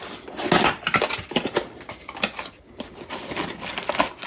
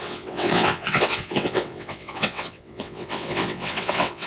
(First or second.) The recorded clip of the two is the first